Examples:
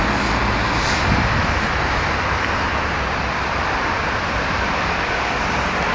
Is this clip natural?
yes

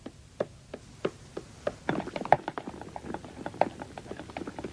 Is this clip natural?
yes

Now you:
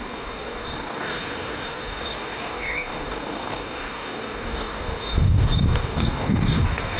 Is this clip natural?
no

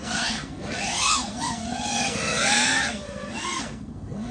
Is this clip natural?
no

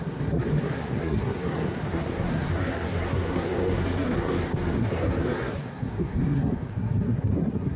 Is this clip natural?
no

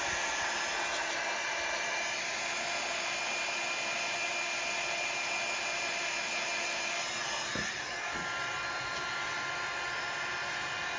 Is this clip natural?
yes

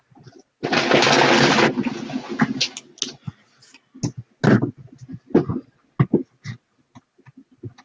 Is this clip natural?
yes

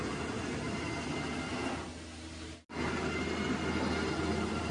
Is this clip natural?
yes